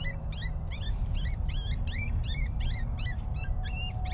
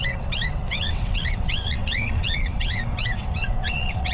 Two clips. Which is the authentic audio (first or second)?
first